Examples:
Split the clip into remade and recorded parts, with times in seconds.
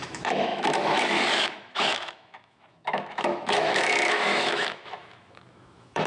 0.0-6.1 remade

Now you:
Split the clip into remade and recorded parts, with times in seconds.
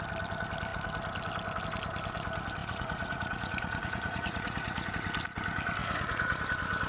0.0-2.6 recorded; 2.6-4.9 remade; 4.9-5.8 recorded; 5.8-6.4 remade; 6.4-6.9 recorded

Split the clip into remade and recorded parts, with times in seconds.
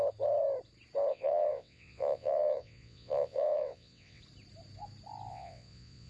0.0-1.1 recorded; 1.1-4.2 remade; 4.2-5.3 recorded; 5.3-6.1 remade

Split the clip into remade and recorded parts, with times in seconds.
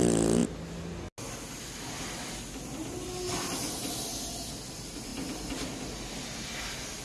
0.0-7.0 recorded